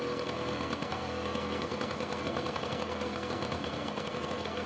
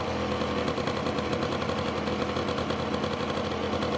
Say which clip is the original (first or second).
second